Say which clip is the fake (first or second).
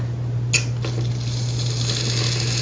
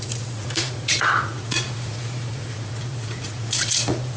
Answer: second